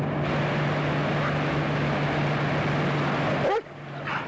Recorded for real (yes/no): yes